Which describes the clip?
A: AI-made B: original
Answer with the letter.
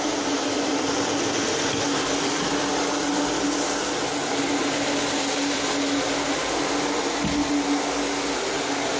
B